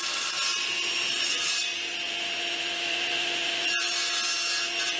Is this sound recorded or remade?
recorded